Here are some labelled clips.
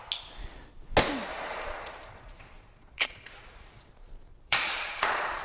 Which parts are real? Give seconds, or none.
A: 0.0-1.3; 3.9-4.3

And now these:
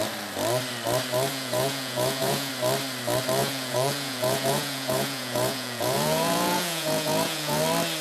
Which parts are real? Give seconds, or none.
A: 0.0-1.3; 2.5-3.4; 7.6-8.0

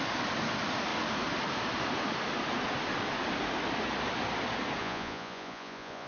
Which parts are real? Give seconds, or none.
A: 0.0-4.8

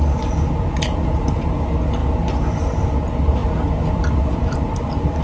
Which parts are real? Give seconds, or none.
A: 0.0-5.2

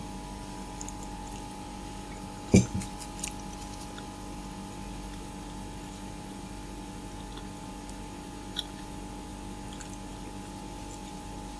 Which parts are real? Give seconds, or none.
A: 0.0-11.6

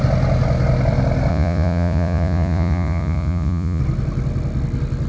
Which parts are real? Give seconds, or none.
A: 0.0-1.3; 3.8-5.1